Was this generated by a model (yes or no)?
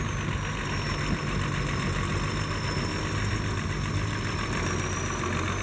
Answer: no